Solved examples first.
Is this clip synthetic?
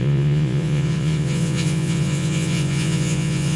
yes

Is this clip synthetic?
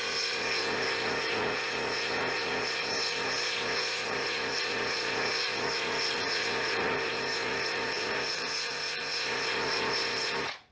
yes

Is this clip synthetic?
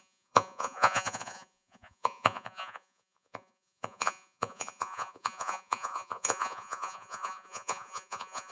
yes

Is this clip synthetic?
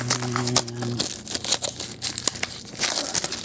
no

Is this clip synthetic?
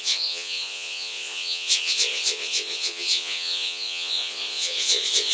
yes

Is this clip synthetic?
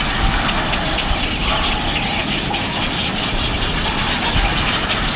no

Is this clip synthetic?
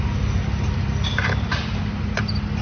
no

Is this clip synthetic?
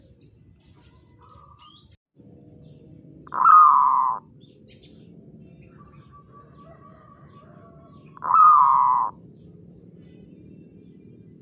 no